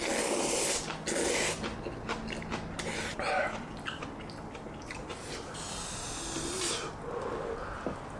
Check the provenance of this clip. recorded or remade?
recorded